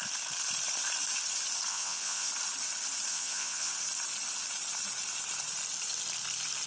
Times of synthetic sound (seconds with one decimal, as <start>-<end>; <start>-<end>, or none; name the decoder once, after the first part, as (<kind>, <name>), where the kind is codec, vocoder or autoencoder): 1.7-2.3 (vocoder, Vocos); 3.1-3.7